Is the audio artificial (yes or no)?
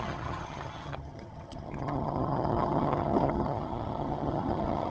yes